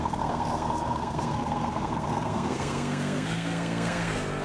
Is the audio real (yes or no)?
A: no